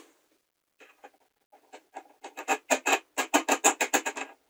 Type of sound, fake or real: real